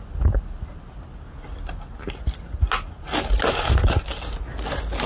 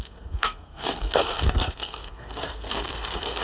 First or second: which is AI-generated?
second